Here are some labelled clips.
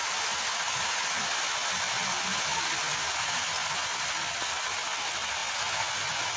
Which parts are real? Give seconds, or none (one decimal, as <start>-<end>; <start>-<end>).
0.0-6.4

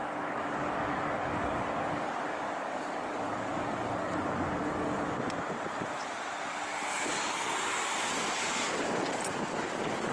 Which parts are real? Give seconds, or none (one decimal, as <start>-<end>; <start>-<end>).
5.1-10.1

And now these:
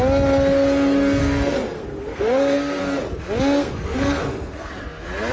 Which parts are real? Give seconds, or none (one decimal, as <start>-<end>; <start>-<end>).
0.0-1.2; 2.8-3.6; 4.7-5.3

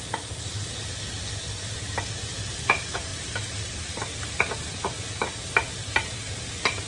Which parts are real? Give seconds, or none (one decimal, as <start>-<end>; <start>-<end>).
0.0-3.1; 4.2-5.8; 6.3-6.9

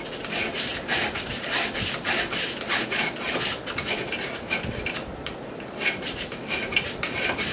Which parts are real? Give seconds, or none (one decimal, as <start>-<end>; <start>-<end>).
0.7-5.2